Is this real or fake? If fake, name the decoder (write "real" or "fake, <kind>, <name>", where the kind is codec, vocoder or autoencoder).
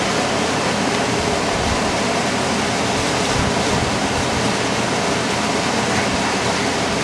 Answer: real